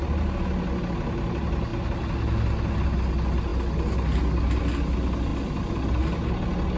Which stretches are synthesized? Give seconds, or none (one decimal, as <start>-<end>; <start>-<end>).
none